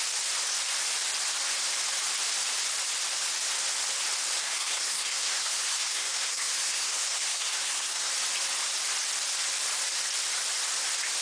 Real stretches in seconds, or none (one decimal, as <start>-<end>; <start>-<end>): 0.0-4.4; 8.1-11.2